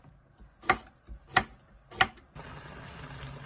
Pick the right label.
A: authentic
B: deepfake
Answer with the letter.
A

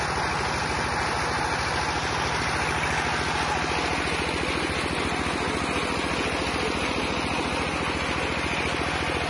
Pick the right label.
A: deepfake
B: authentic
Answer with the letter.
B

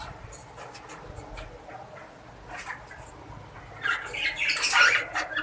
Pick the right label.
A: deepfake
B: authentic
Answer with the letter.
B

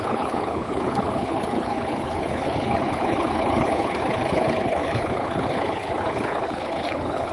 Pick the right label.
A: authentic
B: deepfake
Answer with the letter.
B